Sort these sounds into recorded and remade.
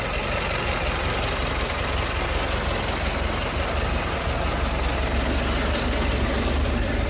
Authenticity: recorded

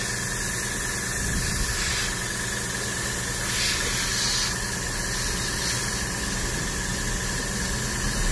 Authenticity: recorded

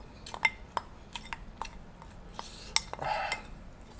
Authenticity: recorded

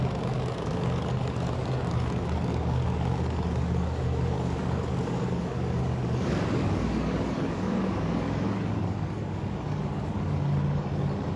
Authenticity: remade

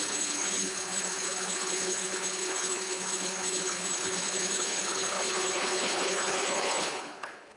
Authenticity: remade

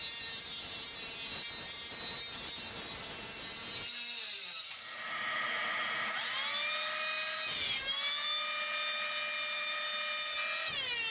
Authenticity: recorded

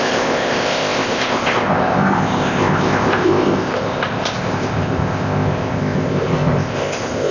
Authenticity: remade